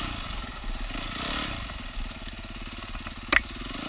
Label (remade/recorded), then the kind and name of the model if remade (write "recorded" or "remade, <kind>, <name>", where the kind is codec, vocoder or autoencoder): recorded